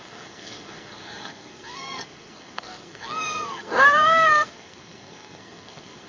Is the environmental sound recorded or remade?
remade